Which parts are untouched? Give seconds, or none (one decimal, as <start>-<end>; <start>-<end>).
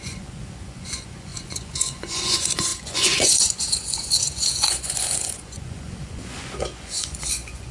none